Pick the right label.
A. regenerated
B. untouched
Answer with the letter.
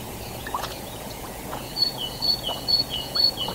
A